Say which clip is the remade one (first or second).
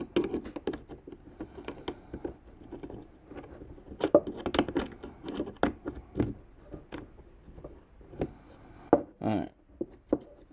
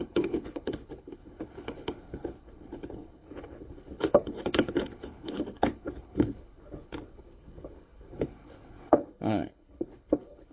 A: second